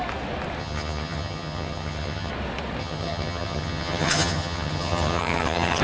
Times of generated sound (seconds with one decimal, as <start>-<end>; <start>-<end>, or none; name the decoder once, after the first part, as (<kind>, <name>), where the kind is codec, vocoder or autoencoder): 0.6-2.3 (vocoder, HiFi-GAN); 2.8-5.8